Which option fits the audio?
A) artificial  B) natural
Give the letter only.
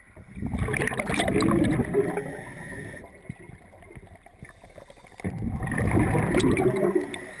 B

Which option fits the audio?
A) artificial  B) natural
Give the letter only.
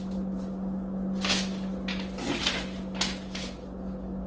B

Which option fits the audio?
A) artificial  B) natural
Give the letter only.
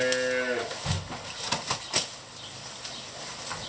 B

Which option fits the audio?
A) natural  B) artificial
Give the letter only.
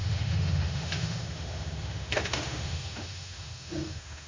B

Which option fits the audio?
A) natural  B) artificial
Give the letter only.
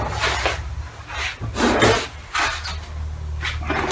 A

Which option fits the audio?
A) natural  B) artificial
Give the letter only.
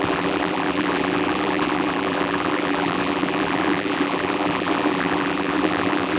B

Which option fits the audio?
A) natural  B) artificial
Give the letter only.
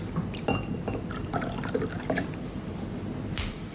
A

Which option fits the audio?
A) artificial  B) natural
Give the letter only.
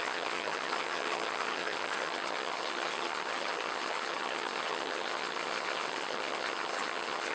A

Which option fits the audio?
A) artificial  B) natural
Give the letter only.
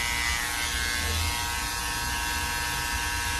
B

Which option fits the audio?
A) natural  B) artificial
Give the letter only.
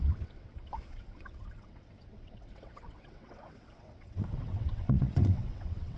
B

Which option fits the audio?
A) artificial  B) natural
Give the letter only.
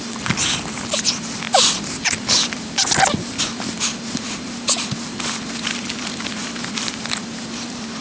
B